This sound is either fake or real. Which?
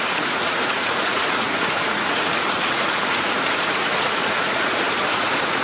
fake